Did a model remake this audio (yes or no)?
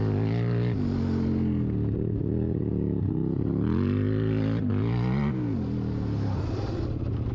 no